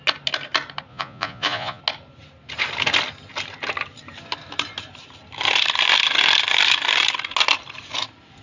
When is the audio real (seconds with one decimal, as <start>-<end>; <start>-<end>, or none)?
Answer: 0.0-0.9; 1.8-8.4